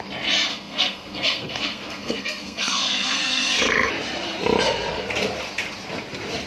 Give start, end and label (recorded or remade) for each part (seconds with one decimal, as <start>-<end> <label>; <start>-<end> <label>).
0.0-0.5 recorded; 0.5-3.9 remade; 3.9-6.5 recorded